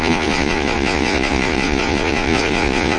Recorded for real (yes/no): no